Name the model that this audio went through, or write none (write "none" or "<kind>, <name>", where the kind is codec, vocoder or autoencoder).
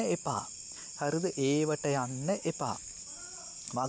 none